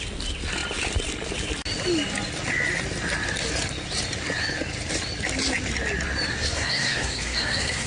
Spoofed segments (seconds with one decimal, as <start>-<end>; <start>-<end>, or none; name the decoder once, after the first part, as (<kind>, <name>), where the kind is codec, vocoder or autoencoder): 6.3-7.9 (codec, SNAC)

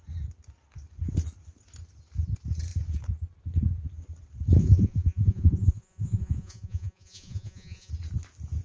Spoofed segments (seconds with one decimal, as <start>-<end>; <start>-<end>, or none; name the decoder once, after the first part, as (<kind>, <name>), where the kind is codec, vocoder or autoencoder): 4.6-7.9 (vocoder, Vocos)